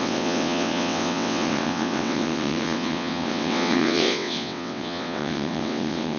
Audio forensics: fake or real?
fake